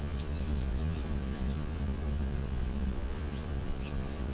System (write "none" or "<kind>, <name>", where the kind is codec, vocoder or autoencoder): vocoder, Vocos